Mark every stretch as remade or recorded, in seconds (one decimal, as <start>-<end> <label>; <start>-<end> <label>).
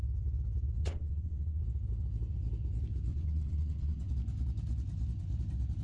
0.0-0.8 recorded; 0.8-1.6 remade; 1.6-3.1 recorded; 3.1-4.1 remade; 4.1-5.8 recorded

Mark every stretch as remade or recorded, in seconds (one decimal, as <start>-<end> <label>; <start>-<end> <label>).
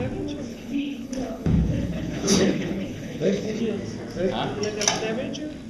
0.0-0.5 recorded; 0.5-3.6 remade; 3.6-5.7 recorded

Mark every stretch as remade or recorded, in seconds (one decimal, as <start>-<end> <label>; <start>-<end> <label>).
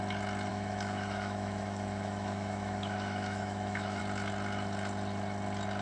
0.0-0.5 recorded; 0.5-4.0 remade; 4.0-5.8 recorded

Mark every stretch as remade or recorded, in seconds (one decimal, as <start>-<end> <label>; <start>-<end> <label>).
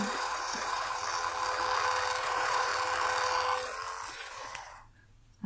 0.0-1.0 remade; 1.0-2.2 recorded; 2.2-2.7 remade; 2.7-4.1 recorded; 4.1-5.5 remade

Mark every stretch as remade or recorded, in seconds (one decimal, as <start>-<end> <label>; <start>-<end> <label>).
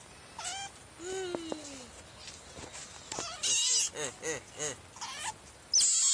0.0-6.1 recorded